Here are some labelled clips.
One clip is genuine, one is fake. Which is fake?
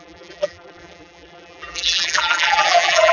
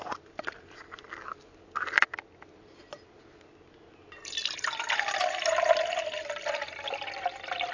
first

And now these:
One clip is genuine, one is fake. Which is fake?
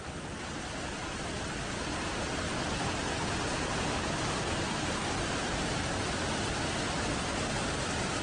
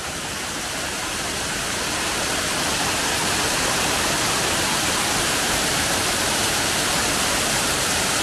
second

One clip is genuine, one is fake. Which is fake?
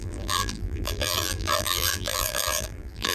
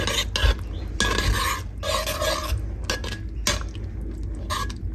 first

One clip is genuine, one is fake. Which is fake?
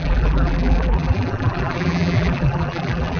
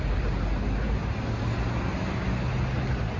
first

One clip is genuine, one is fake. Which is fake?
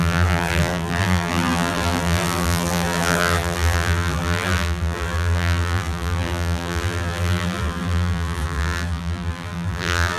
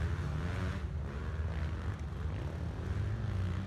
first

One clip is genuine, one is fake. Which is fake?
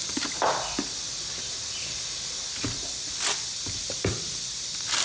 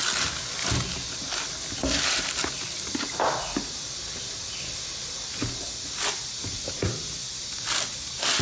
first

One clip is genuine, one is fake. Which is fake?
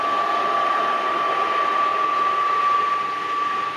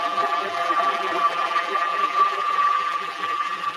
second